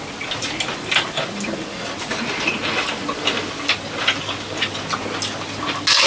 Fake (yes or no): no